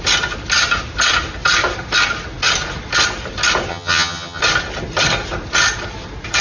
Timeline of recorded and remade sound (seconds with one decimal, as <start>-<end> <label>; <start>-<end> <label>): 0.0-3.7 recorded; 3.7-4.4 remade; 4.4-6.4 recorded